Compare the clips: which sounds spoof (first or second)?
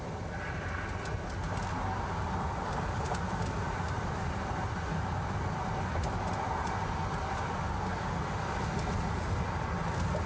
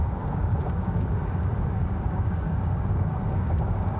second